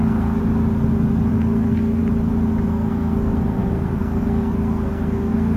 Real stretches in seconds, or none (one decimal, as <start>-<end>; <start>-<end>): 0.4-1.3; 2.0-2.7